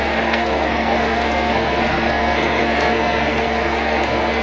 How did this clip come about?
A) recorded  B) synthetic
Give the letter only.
B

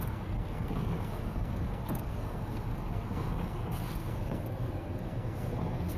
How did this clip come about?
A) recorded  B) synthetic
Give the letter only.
B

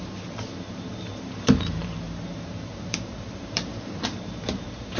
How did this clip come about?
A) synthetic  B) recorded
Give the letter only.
A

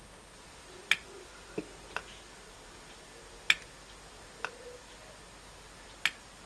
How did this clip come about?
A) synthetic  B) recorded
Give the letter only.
B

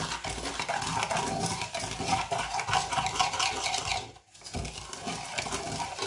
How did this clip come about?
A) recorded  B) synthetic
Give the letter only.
A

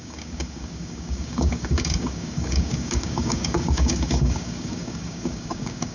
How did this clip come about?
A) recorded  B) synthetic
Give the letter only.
B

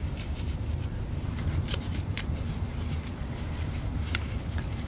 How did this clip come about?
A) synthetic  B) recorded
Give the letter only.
A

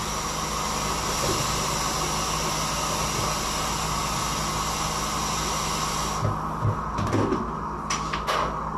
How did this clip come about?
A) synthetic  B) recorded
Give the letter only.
B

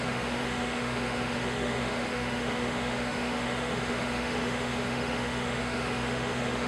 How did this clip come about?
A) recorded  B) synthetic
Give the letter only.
B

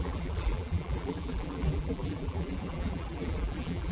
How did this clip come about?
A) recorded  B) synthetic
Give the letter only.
B